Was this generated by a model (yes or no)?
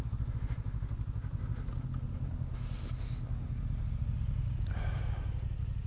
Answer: no